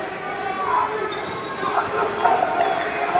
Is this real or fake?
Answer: real